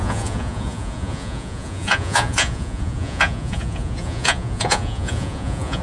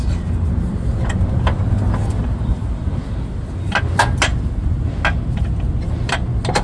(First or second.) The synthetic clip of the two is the first